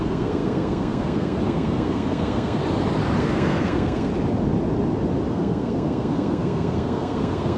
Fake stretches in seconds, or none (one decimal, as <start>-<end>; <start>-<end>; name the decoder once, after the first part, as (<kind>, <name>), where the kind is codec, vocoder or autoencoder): 0.0-2.6 (codec, SNAC); 3.2-4.1; 5.3-7.6